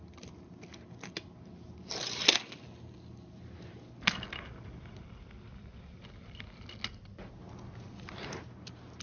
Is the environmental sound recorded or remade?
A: recorded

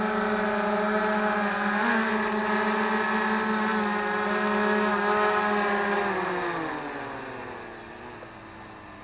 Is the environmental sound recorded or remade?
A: recorded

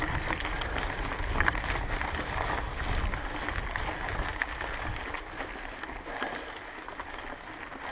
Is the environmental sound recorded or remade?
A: recorded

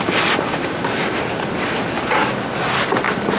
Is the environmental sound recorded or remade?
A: recorded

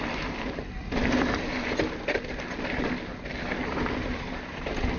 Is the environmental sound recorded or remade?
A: recorded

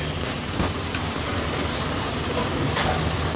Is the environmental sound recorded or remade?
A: recorded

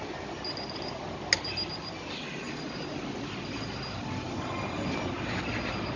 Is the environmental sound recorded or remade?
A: recorded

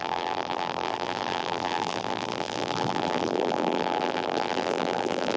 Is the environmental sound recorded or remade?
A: remade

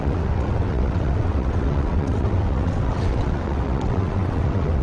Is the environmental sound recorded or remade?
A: remade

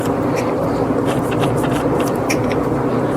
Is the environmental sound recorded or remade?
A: recorded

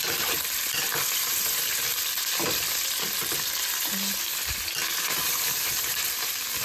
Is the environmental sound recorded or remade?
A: remade